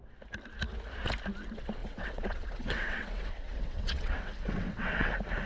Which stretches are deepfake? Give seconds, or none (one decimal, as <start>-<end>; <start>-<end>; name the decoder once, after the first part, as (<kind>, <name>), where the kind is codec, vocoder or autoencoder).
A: 1.8-5.1 (vocoder, WaveNeXt)